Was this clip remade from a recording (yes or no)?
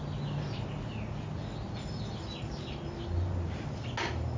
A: no